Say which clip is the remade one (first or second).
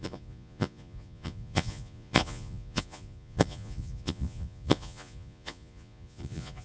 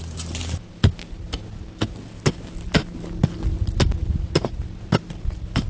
first